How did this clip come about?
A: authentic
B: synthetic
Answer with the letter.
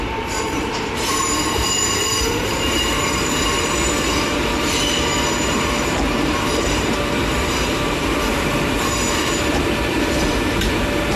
B